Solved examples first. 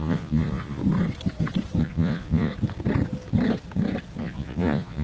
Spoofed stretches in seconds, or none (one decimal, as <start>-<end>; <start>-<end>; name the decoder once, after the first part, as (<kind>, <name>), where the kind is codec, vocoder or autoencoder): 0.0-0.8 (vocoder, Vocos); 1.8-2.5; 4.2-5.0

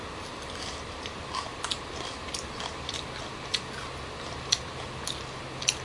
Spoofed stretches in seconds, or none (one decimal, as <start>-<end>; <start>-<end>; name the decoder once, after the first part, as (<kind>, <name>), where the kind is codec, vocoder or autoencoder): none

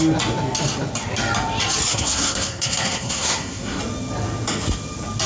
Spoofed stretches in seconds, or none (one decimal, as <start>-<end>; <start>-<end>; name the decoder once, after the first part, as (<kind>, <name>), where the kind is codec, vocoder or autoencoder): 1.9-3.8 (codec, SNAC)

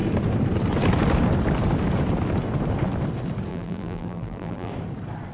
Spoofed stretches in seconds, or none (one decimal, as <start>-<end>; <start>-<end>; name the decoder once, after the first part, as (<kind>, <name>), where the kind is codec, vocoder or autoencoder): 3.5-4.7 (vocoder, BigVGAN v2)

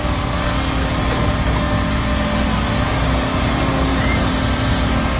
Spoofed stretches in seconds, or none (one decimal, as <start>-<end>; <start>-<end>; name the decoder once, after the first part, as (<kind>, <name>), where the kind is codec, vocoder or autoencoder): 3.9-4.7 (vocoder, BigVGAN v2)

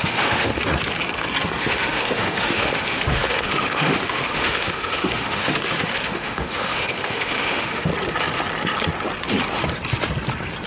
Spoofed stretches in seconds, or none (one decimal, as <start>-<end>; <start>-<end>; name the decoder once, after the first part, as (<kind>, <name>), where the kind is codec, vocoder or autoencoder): 0.0-0.5 (autoencoder, DAC-VAE); 1.6-7.9